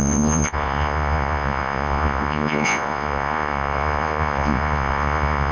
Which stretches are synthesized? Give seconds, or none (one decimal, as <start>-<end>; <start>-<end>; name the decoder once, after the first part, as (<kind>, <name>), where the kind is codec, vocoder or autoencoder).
0.0-5.5 (vocoder, Vocos)